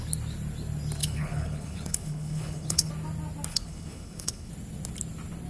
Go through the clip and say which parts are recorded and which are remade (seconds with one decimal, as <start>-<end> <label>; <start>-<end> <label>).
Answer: 0.0-1.0 recorded; 1.0-2.9 remade; 2.9-3.5 recorded; 3.5-4.5 remade; 4.5-5.5 recorded